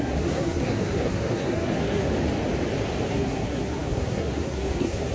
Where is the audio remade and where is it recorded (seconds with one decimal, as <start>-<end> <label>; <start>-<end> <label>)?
0.0-2.1 remade; 2.1-3.1 recorded; 3.1-5.1 remade